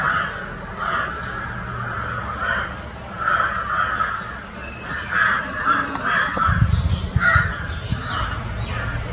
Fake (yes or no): no